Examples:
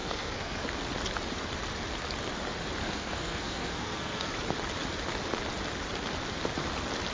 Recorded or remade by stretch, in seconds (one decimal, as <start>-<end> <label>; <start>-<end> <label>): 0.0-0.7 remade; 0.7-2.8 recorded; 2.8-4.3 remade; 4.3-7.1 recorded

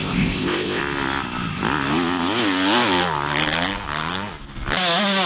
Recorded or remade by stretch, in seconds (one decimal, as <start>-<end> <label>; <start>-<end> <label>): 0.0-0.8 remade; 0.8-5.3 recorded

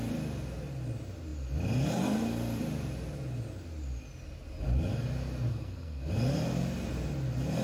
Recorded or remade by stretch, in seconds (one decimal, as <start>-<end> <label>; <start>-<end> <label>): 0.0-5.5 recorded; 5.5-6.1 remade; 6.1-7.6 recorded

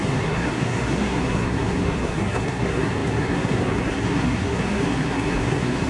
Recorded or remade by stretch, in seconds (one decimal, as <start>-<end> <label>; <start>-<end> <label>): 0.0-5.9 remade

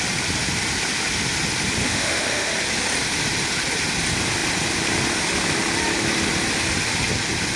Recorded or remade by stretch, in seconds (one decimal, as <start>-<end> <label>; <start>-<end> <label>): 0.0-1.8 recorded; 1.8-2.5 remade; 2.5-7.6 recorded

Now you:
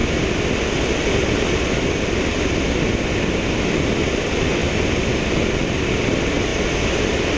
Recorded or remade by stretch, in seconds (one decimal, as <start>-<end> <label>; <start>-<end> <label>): 0.0-4.6 recorded; 4.6-5.5 remade; 5.5-7.4 recorded

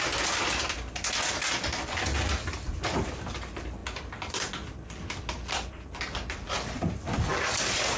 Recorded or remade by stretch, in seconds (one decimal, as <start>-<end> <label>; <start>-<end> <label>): 0.0-8.0 remade